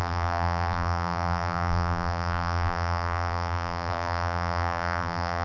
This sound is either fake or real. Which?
fake